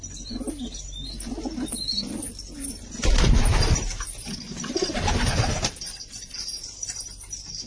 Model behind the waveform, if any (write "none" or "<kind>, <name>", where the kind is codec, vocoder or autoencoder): none